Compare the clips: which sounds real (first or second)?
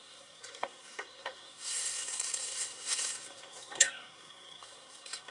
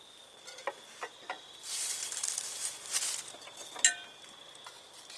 second